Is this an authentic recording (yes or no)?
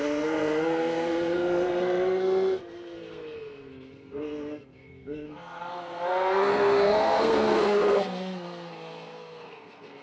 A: no